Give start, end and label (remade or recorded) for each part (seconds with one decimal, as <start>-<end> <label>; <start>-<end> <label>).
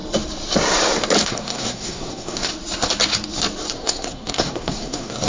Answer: 0.0-1.2 recorded; 1.2-2.5 remade; 2.5-3.7 recorded; 3.7-5.3 remade